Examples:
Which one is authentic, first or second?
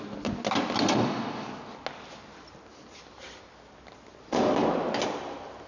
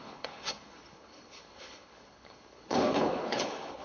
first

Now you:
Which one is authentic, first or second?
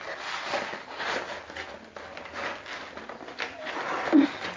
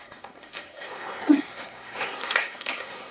first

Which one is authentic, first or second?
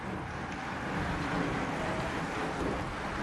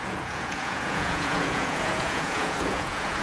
first